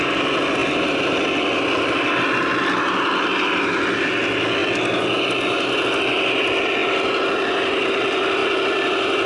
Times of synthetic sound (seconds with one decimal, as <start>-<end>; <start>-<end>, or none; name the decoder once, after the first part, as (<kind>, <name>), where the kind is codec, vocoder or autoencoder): none